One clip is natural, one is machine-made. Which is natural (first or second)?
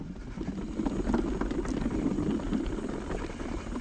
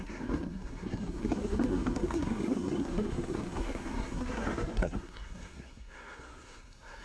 first